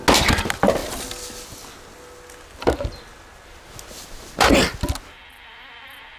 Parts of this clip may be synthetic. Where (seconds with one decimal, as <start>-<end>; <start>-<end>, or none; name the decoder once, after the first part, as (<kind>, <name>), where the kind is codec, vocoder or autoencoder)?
none